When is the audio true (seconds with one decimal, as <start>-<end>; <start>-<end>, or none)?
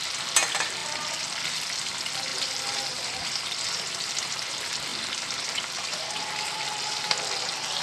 0.0-0.8; 1.4-2.3; 3.2-7.8